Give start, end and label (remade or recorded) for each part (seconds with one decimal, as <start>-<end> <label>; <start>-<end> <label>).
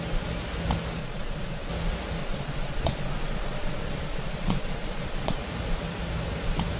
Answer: 0.0-1.0 recorded; 1.0-1.7 remade; 1.7-2.2 recorded; 2.2-5.4 remade; 5.4-6.8 recorded